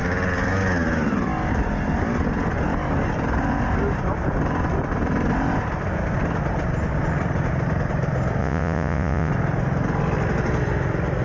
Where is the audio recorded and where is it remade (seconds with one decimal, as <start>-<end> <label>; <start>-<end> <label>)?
0.0-8.4 recorded; 8.4-9.3 remade; 9.3-11.2 recorded